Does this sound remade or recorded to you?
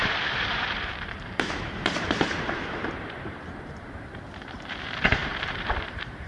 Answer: remade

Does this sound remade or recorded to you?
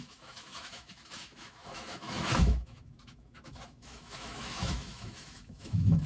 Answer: remade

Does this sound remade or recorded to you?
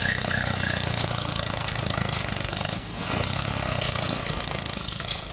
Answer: remade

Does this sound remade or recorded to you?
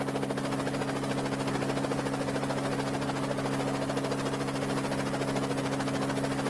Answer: recorded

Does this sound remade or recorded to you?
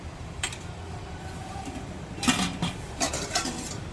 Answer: remade